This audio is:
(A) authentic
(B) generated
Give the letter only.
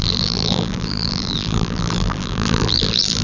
B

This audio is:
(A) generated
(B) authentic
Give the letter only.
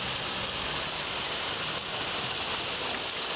B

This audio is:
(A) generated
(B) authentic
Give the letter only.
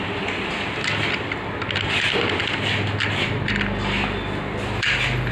B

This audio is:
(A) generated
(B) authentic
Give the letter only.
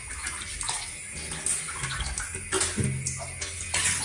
B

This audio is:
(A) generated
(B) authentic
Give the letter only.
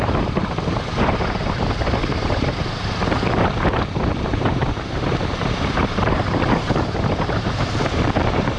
A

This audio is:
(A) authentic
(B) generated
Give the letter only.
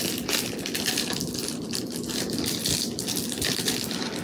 B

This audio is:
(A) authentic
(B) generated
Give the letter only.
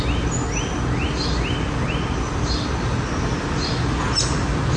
A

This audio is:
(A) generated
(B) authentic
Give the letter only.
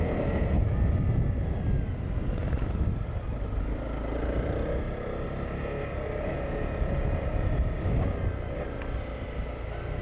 B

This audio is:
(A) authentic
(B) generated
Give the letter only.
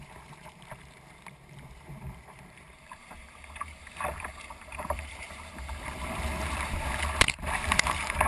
B